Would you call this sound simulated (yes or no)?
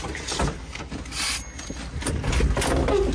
no